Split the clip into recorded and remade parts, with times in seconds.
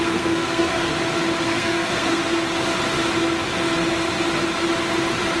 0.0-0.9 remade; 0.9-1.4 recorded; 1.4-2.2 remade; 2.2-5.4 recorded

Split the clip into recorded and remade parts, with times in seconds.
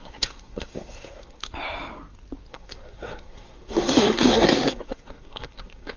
0.0-1.5 remade; 1.5-2.5 recorded; 2.5-6.0 remade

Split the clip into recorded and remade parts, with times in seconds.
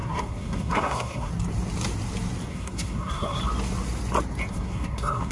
0.0-1.3 remade; 1.3-2.5 recorded; 2.5-3.4 remade; 3.4-4.5 recorded; 4.5-5.3 remade